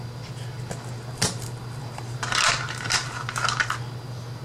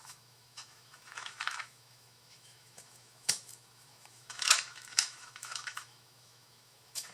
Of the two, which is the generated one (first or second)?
second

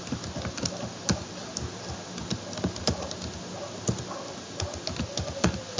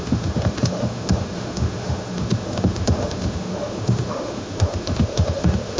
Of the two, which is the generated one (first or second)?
second